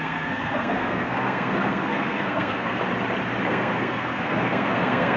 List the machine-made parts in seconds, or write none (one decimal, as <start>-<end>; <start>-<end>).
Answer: 0.0-2.8; 3.5-5.2